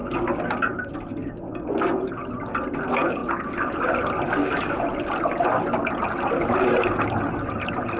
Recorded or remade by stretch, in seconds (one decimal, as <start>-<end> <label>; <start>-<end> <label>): 0.0-8.0 recorded